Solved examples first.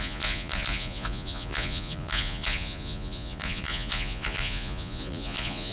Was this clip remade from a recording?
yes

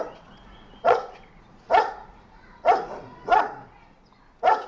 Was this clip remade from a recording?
yes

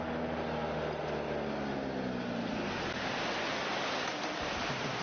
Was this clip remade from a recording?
no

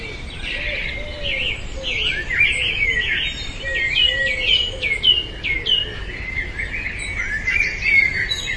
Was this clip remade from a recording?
no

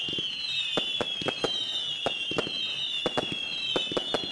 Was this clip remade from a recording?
no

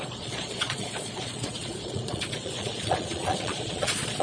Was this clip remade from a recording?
yes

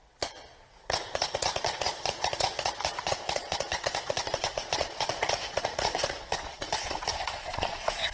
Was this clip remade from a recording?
yes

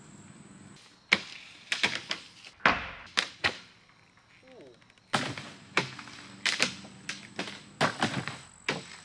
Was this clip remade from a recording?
no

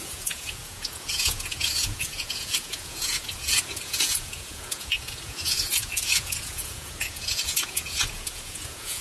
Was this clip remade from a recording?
yes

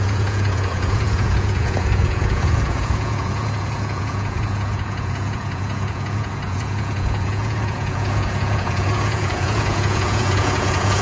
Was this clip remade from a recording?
yes